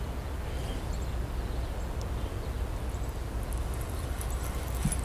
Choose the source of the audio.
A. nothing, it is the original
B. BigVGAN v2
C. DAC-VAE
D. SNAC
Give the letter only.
A